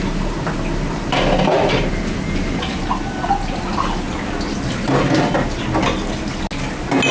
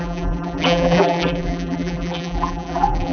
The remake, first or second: second